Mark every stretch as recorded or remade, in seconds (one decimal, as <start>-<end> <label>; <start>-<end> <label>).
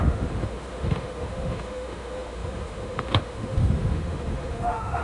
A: 0.0-5.0 remade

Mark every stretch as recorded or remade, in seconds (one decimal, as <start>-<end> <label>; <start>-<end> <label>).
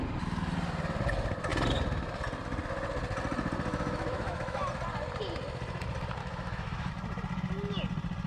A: 0.0-3.7 recorded; 3.7-4.6 remade; 4.6-6.2 recorded; 6.2-6.9 remade; 6.9-8.3 recorded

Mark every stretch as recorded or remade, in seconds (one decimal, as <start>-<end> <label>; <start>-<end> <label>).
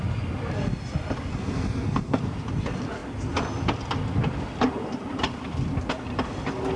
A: 0.0-1.3 recorded; 1.3-2.2 remade; 2.2-6.8 recorded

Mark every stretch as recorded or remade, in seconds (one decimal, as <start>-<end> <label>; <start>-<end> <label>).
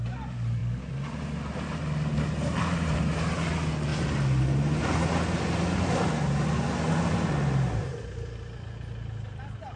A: 0.0-9.8 recorded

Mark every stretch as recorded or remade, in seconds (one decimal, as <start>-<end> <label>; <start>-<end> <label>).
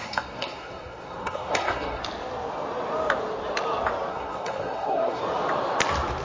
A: 0.0-2.0 remade; 2.0-4.1 recorded; 4.1-5.2 remade; 5.2-6.2 recorded